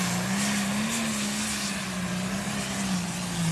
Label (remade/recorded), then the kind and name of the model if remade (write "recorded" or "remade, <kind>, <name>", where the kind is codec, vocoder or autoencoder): recorded